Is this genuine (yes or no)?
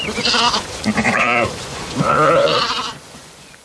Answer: no